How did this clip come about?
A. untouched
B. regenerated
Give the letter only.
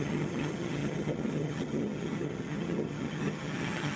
B